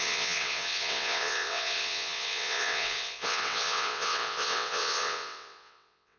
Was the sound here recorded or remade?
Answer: remade